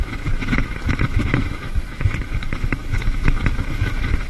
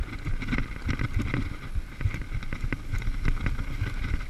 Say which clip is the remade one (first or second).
first